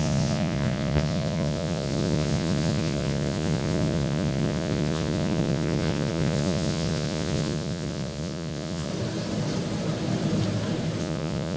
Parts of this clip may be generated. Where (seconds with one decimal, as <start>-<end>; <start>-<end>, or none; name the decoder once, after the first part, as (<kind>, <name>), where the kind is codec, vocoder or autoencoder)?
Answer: 0.0-8.9 (vocoder, Vocos); 11.0-11.6